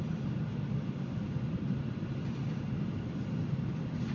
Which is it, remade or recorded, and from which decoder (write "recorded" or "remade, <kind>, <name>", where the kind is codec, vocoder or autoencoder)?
recorded